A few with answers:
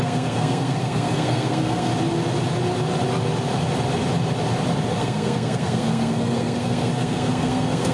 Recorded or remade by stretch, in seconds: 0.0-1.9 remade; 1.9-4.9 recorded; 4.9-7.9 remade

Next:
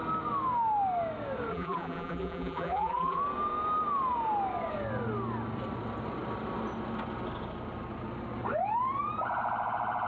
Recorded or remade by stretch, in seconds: 0.0-1.5 recorded; 1.5-3.2 remade; 3.2-10.1 recorded

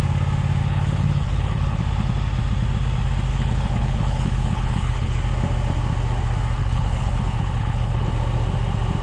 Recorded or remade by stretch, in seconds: 0.0-0.6 recorded; 0.6-1.8 remade; 1.8-3.3 recorded; 3.3-5.2 remade; 5.2-6.6 recorded; 6.6-8.1 remade; 8.1-9.0 recorded

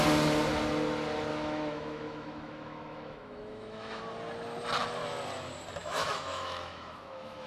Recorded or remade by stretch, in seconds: 0.0-1.3 recorded; 1.3-4.0 remade; 4.0-5.8 recorded; 5.8-7.5 remade

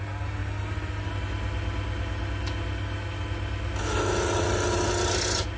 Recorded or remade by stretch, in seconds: 0.0-5.6 recorded

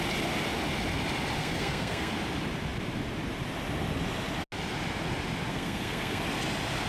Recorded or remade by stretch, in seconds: 0.0-1.4 recorded; 1.4-2.1 remade; 2.1-5.5 recorded; 5.5-6.2 remade; 6.2-6.9 recorded